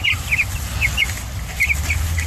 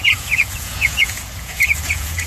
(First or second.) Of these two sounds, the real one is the first